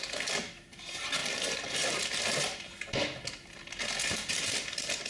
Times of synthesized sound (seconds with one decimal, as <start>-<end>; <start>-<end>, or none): none